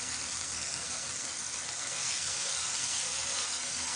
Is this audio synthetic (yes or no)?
yes